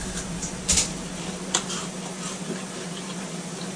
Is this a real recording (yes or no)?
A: yes